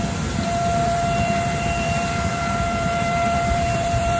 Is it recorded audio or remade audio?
remade